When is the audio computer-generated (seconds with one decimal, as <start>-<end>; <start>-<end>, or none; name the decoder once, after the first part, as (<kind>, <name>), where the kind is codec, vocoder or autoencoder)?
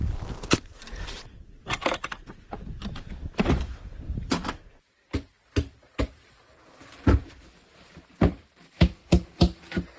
0.0-9.0 (vocoder, BigVGAN v2)